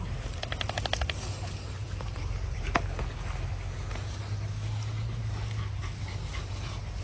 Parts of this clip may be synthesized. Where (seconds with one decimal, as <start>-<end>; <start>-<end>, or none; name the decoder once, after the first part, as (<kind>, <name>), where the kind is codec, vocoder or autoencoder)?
none